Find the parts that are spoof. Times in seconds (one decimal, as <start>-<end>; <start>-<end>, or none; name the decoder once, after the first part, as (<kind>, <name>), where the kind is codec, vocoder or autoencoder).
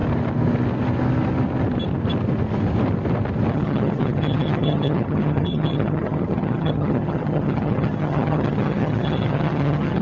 3.5-10.0 (vocoder, HiFi-GAN)